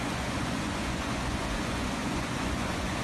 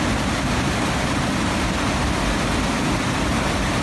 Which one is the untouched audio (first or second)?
second